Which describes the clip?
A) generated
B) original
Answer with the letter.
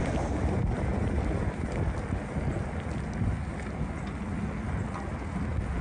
B